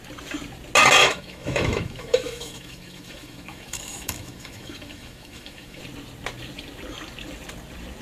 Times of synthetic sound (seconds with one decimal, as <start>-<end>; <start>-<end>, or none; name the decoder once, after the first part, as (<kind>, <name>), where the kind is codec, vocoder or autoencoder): 1.0-5.8 (autoencoder, DAC-VAE)